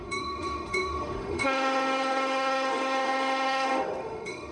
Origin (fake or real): fake